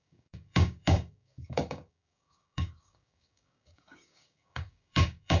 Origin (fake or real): fake